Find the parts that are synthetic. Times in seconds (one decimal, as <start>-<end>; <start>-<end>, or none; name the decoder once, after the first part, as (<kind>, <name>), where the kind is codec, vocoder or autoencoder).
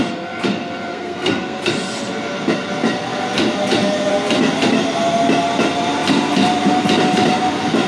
0.9-1.7 (codec, SNAC)